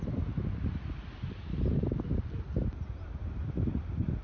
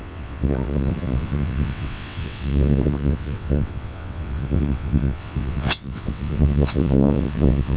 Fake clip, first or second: second